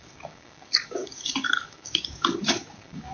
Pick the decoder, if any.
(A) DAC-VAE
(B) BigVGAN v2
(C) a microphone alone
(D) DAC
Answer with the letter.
D